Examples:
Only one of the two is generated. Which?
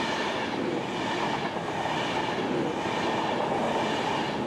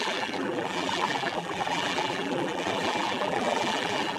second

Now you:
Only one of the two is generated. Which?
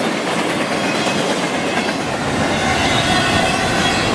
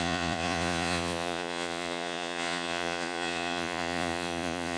second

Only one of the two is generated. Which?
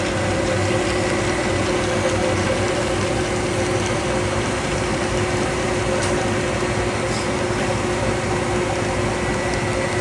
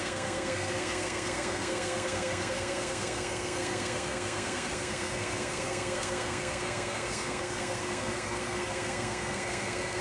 second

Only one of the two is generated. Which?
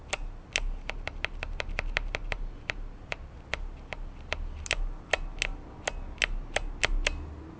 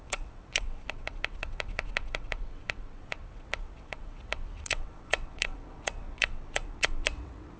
second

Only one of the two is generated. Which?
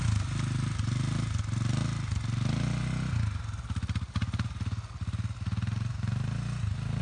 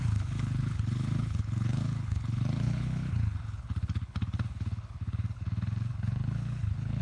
second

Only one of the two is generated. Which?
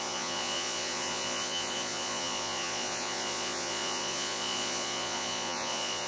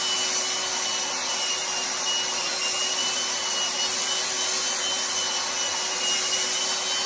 first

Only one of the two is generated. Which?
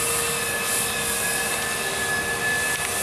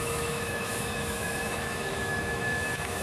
second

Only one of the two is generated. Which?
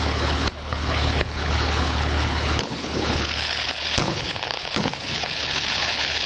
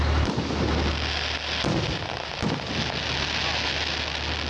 first